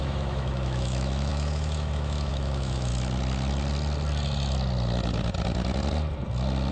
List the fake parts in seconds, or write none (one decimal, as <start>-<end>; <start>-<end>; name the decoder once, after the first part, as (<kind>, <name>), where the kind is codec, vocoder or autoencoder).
0.0-2.9 (autoencoder, DAC-VAE)